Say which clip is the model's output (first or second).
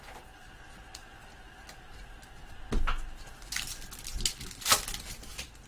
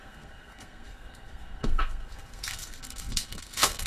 second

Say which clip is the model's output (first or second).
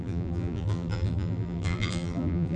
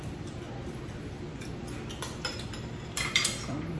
first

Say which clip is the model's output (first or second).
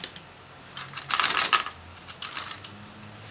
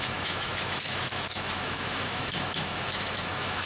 second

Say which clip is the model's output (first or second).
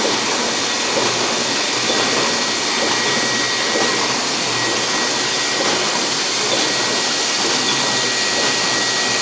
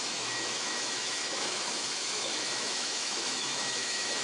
second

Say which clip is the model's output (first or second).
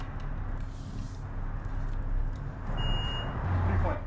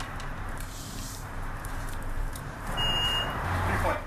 second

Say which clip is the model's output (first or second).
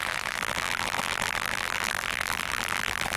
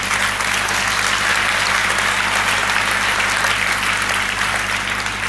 first